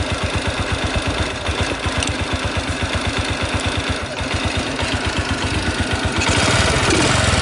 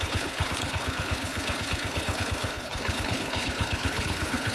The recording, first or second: first